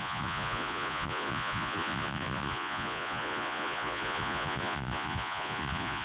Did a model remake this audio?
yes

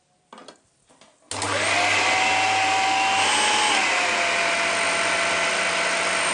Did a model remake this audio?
no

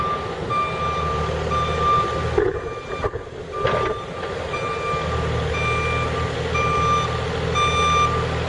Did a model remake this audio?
no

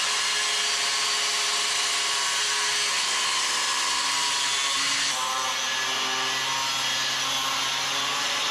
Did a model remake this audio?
no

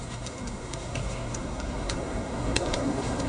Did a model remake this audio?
yes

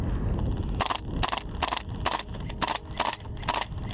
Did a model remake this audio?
no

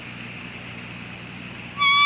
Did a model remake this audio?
no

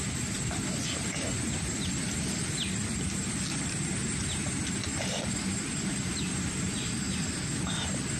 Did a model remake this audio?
no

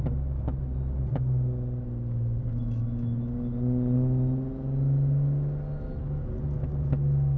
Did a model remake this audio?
no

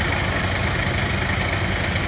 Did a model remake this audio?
no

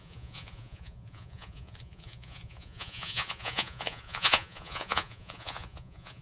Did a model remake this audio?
yes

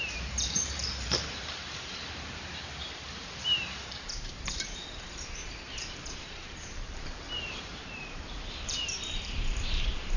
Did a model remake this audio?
yes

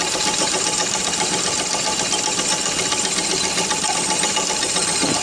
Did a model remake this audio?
no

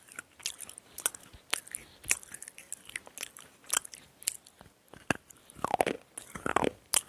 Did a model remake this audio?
no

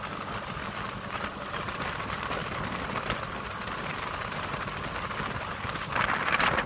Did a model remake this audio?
yes